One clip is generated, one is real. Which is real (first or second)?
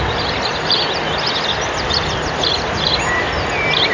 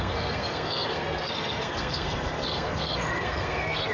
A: first